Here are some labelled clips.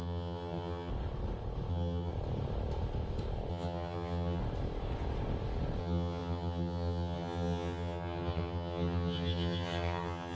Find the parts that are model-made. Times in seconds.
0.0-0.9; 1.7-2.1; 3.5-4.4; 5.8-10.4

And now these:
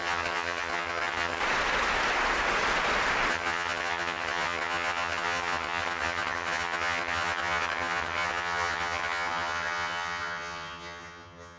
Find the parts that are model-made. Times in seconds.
0.0-1.4; 3.3-11.6

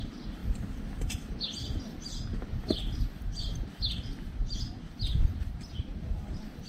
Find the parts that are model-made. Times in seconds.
0.0-6.7

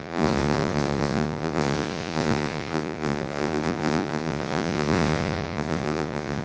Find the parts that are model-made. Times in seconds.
0.0-6.4

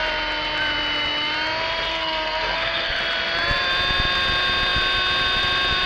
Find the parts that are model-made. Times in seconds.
1.9-3.0

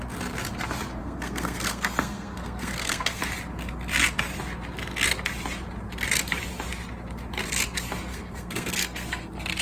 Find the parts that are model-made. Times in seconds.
1.0-3.2; 8.1-9.2

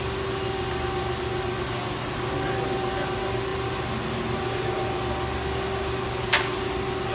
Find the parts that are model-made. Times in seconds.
none

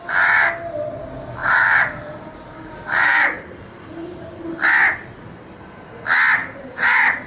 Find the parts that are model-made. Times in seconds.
1.4-3.9; 6.4-7.3